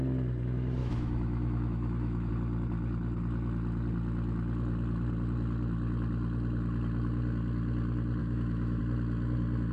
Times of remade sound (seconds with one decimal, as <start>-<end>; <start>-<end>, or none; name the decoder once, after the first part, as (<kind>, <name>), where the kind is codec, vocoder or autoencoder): 0.8-2.3 (autoencoder, DAC-VAE); 8.2-8.8